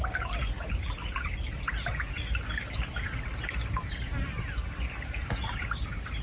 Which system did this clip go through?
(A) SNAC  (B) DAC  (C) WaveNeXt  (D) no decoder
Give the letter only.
D